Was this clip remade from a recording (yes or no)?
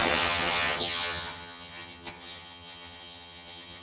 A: yes